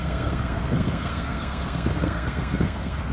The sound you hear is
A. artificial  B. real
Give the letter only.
A